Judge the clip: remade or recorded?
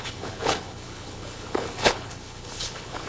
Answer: remade